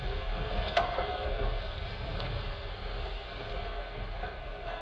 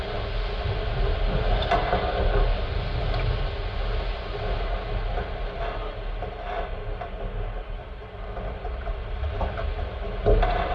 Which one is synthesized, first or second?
first